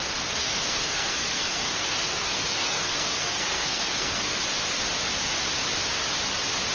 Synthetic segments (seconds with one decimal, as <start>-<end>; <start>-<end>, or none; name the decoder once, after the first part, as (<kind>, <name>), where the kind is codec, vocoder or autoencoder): 0.4-4.4 (codec, SNAC)

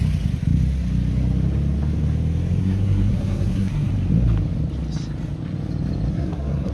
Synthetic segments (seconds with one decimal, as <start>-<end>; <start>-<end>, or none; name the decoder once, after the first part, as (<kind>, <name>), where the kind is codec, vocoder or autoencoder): 2.6-3.9 (codec, SNAC); 6.1-6.7

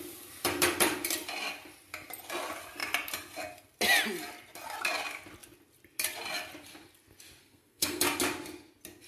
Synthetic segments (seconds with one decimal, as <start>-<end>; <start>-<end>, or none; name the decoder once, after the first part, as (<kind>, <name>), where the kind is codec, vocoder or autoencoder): 7.4-8.0 (codec, SNAC)

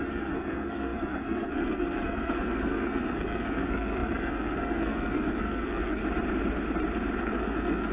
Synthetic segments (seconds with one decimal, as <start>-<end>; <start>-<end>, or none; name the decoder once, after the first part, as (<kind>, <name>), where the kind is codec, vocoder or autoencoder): 0.0-6.0 (codec, SNAC); 7.2-7.9

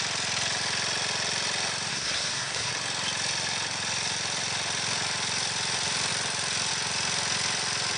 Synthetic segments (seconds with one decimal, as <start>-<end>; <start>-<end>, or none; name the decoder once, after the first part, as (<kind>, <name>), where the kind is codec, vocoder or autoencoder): 1.9-2.7 (codec, SNAC)

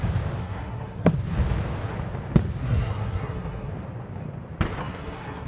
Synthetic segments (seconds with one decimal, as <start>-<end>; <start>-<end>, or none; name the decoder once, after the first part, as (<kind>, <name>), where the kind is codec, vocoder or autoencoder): 0.4-1.1 (codec, SNAC); 2.6-3.7; 4.8-5.5